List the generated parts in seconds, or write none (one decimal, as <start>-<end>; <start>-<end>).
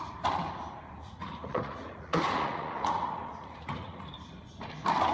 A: 1.0-4.1